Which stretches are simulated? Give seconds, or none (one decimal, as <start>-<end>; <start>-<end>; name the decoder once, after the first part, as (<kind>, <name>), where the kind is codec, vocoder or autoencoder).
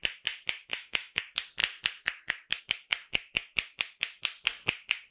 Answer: 0.7-1.2 (autoencoder, DAC-VAE)